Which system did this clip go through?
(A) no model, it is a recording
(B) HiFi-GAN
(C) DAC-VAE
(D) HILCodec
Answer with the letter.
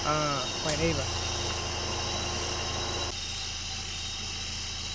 A